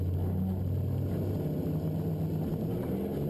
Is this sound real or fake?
real